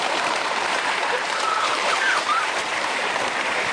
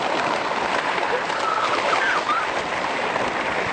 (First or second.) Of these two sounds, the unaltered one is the second